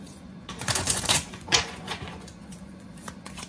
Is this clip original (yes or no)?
no